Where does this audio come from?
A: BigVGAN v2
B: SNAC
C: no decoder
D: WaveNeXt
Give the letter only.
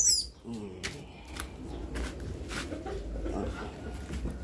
C